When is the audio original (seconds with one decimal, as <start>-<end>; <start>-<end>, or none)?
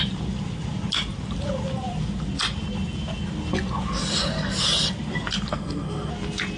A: 0.0-5.5; 6.1-6.6